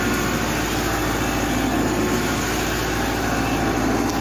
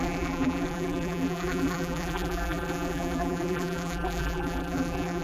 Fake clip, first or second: second